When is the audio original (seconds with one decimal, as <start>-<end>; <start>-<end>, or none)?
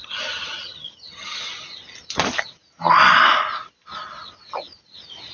1.4-5.3